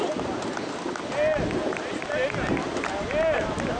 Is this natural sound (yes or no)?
yes